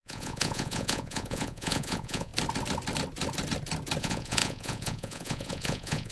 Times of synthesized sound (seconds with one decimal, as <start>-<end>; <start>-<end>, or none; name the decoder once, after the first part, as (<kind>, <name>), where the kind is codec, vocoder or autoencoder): 0.0-2.3 (vocoder, Vocos); 4.0-6.1